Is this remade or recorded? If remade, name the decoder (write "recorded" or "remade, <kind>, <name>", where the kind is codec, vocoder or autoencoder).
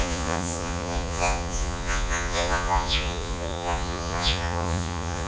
remade, vocoder, Vocos